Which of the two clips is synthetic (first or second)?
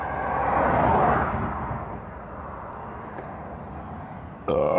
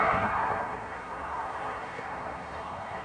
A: second